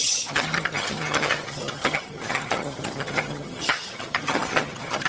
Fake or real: fake